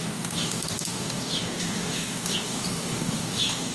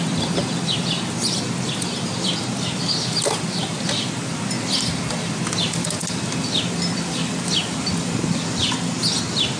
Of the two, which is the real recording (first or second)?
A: second